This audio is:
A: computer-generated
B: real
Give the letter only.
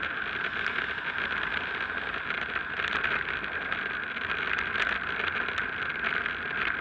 B